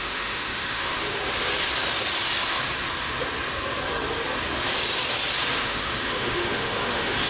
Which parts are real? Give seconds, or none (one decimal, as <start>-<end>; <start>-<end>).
1.2-5.6